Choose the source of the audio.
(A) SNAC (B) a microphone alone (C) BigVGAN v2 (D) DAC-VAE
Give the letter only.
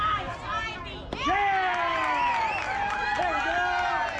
B